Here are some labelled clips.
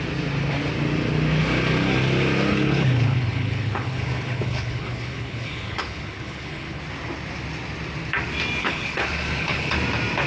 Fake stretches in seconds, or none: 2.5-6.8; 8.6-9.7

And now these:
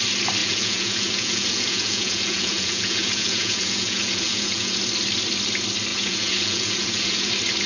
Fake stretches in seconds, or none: 0.4-4.8; 5.9-7.3

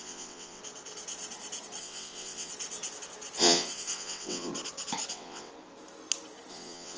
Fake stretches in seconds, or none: 0.0-0.6; 1.8-2.5; 3.4-4.5; 5.1-5.5; 6.5-7.0

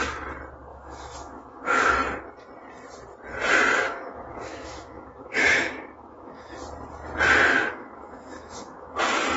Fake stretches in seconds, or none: 0.7-1.9; 3.7-6.5; 7.5-9.0

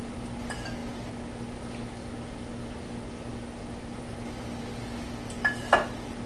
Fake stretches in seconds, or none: none